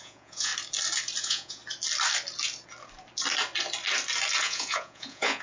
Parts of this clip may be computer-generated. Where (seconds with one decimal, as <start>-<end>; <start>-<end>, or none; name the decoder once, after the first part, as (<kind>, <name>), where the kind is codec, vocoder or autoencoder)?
0.0-0.5 (vocoder, Vocos); 1.2-1.6; 4.4-5.4